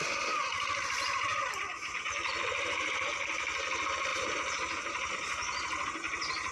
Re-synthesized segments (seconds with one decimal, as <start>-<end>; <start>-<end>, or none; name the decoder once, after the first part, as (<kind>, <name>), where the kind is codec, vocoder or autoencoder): 1.3-3.1 (vocoder, BigVGAN v2); 4.1-5.1